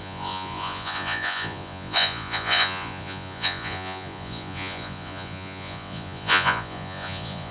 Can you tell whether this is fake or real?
fake